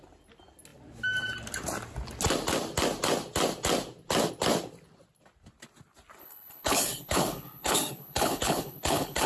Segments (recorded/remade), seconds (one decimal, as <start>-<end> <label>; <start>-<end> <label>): 0.0-6.2 recorded; 6.2-9.3 remade